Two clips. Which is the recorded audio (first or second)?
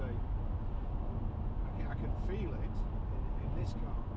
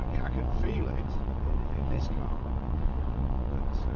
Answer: first